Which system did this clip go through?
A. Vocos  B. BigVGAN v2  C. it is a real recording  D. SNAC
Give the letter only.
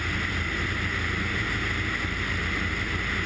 C